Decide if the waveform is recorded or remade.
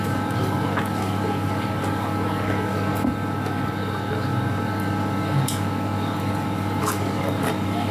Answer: remade